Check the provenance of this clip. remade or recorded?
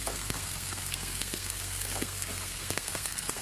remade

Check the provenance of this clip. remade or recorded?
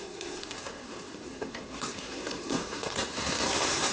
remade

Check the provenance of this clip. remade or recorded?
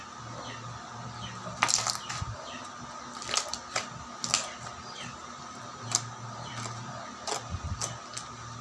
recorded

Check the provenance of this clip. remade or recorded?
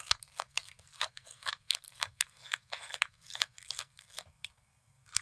remade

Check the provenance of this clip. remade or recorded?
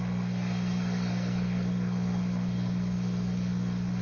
remade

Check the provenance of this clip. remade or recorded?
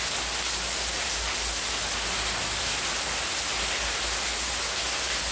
recorded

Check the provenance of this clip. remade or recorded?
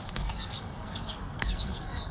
remade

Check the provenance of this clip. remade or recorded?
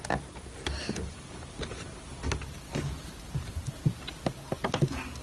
recorded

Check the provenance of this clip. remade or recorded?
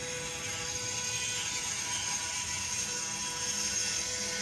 recorded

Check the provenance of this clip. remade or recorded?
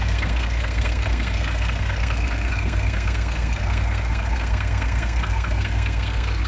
remade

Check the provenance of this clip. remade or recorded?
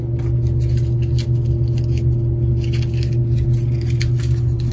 recorded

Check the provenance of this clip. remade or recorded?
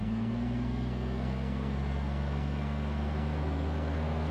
remade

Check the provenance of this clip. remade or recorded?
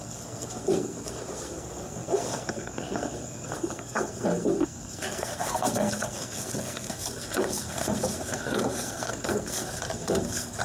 remade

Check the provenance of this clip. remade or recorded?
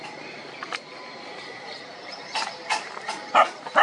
recorded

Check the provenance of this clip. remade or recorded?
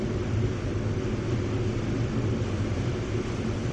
recorded